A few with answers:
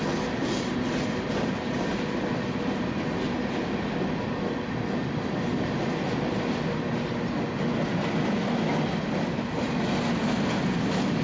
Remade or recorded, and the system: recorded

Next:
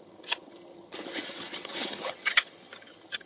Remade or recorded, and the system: remade, vocoder, HiFi-GAN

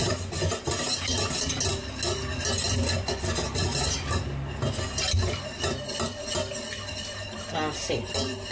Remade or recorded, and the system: recorded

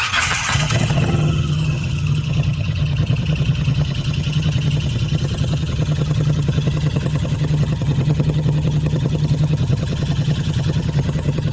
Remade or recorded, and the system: remade, vocoder, HiFi-GAN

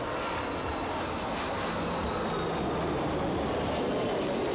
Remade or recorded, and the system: recorded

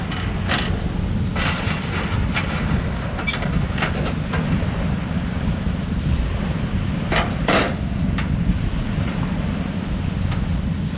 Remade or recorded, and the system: recorded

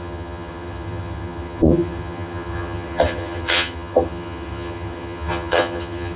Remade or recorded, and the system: remade, vocoder, HiFi-GAN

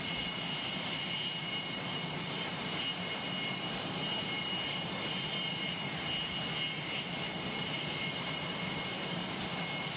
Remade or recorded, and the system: recorded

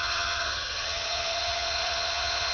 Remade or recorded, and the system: remade, vocoder, HiFi-GAN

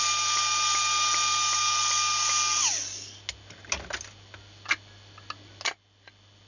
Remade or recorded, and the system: recorded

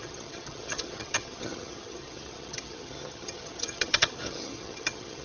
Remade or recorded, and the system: remade, vocoder, HiFi-GAN